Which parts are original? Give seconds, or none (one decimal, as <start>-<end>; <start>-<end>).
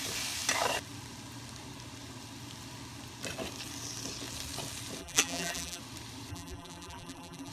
0.0-5.0; 5.8-6.3